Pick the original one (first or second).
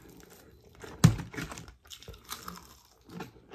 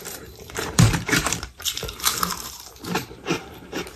first